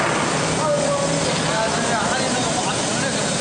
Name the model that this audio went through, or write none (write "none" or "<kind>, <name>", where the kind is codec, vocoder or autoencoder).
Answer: none